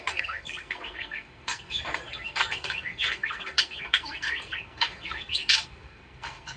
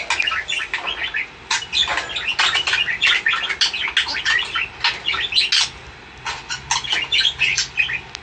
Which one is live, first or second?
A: second